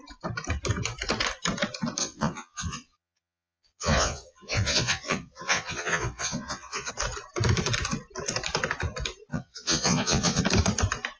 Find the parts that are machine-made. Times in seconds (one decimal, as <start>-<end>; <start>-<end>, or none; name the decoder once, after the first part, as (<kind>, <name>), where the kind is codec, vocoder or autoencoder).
2.0-6.9 (vocoder, Vocos); 9.3-10.4